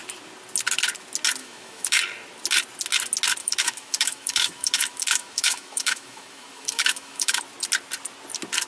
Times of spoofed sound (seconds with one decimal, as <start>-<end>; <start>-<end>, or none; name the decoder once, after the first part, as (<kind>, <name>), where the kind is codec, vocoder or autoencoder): 1.4-2.0 (autoencoder, DAC-VAE); 3.4-7.4